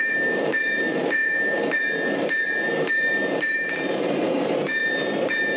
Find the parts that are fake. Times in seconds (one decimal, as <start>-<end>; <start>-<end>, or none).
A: 0.0-5.6